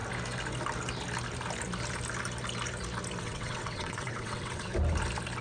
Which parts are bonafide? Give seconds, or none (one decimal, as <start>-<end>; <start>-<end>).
0.0-3.2; 4.7-5.4